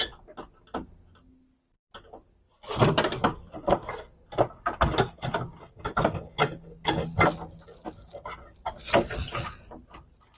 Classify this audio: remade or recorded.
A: recorded